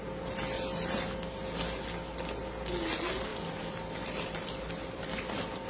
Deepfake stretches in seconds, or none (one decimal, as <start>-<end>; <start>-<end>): 3.3-5.7